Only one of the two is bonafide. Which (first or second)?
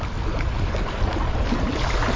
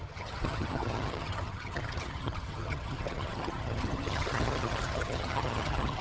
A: first